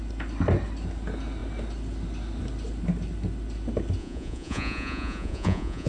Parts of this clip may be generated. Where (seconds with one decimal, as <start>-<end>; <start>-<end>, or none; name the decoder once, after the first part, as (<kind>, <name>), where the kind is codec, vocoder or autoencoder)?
4.0-5.9 (vocoder, Vocos)